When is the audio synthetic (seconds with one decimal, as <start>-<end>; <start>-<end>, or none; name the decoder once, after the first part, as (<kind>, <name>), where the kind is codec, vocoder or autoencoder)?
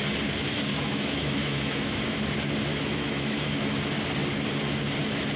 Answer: 0.7-2.0 (autoencoder, DAC-VAE); 2.7-3.5